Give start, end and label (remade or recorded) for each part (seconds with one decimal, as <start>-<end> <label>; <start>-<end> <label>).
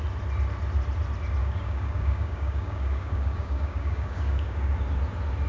0.0-1.4 recorded; 1.4-4.7 remade; 4.7-5.5 recorded